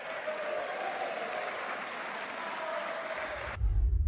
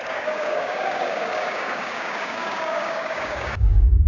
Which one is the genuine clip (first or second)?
first